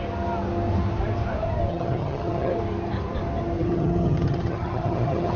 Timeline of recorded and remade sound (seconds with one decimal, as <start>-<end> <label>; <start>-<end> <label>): 0.0-1.7 recorded; 1.7-2.5 remade; 2.5-3.6 recorded; 3.6-5.4 remade